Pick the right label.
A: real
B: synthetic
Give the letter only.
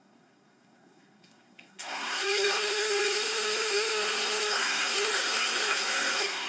B